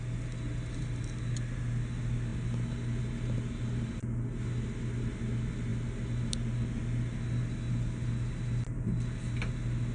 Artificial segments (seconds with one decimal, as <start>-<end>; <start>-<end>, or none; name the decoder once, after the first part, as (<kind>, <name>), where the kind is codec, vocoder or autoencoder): none